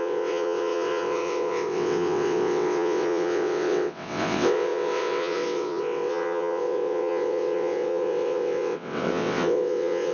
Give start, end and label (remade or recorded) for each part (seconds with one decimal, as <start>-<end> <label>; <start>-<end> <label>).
0.0-10.1 remade